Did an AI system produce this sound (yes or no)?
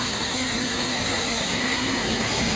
yes